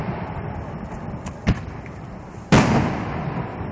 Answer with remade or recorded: remade